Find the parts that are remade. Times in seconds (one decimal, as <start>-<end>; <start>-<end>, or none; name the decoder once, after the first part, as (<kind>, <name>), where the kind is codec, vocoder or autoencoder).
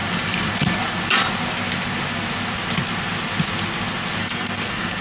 4.2-5.0 (codec, SNAC)